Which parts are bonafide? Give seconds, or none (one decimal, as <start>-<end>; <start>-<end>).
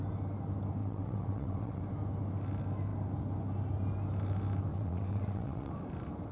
0.0-0.8; 1.8-4.7; 5.7-6.3